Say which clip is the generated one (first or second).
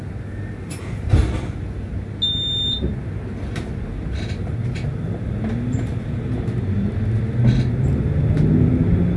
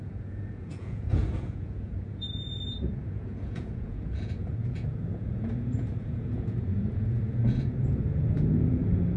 second